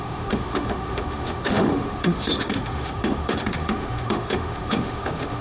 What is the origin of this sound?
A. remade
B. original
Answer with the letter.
A